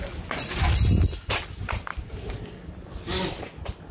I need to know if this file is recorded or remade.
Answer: recorded